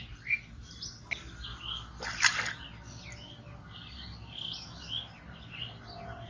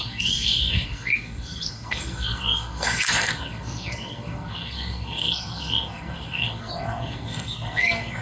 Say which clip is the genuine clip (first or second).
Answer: first